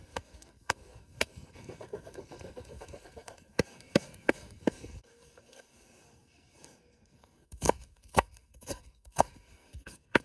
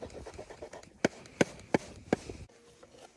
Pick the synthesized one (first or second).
first